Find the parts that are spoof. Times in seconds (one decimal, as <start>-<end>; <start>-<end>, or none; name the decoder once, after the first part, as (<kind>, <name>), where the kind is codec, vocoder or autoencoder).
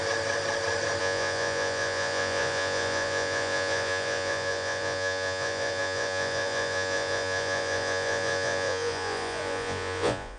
1.0-10.4 (vocoder, Vocos)